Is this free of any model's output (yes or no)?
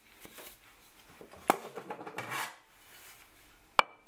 yes